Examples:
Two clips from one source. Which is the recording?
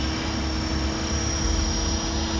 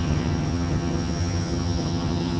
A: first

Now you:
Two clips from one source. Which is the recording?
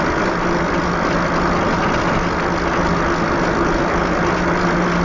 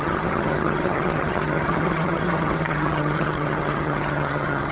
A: first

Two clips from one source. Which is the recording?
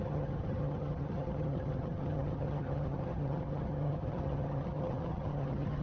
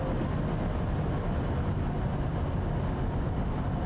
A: second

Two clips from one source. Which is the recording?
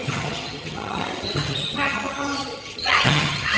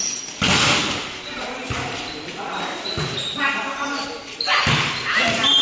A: second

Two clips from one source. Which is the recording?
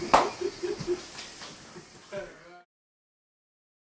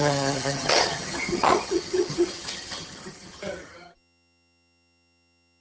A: first